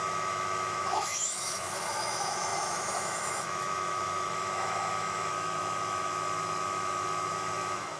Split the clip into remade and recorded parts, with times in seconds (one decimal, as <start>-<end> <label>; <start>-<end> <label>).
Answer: 0.0-8.0 remade